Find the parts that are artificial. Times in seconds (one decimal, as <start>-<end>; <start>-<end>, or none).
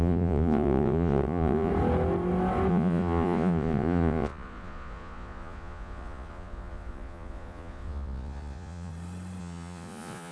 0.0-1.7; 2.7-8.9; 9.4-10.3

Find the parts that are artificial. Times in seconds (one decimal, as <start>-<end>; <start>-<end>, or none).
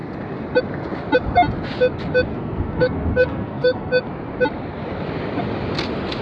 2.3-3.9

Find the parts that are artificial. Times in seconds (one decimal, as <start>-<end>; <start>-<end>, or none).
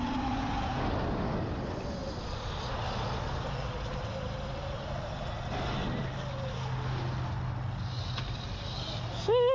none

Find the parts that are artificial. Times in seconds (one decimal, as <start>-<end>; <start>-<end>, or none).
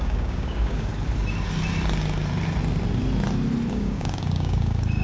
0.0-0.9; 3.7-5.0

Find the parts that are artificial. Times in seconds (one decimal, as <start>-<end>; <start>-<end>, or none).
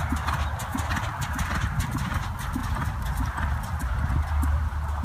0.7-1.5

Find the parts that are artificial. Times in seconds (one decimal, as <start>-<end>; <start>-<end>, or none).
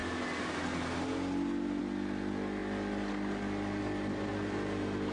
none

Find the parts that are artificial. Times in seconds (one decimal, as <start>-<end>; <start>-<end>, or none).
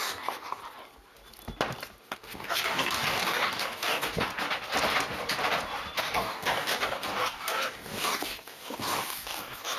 0.0-0.6; 2.0-4.3; 6.0-9.8